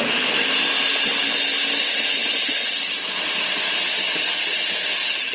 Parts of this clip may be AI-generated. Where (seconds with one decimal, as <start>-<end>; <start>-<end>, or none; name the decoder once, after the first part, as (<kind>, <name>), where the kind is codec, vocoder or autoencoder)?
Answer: none